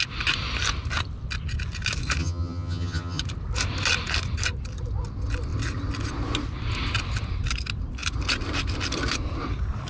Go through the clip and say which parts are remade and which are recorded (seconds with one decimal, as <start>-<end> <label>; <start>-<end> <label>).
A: 0.0-2.2 recorded; 2.2-3.2 remade; 3.2-9.9 recorded